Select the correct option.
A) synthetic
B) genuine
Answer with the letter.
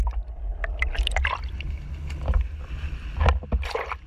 B